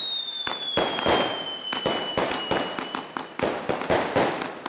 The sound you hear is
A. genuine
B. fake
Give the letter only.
A